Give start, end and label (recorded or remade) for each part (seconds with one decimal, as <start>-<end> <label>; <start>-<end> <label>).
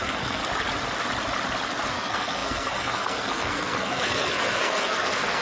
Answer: 0.0-0.4 remade; 0.4-1.9 recorded; 1.9-5.4 remade